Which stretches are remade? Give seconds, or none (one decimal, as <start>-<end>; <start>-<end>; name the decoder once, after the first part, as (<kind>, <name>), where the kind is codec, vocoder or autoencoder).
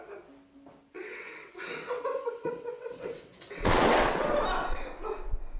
0.9-4.3 (vocoder, WaveNeXt)